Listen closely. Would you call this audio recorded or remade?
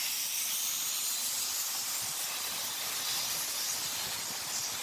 recorded